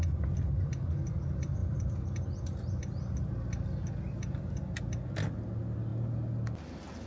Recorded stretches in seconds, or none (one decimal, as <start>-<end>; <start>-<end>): 0.0-7.1